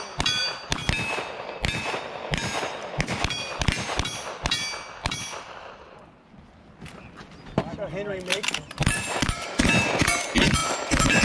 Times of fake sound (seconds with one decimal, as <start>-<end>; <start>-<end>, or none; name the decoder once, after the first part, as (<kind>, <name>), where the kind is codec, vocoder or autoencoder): 8.3-9.6 (vocoder, BigVGAN v2); 10.6-11.2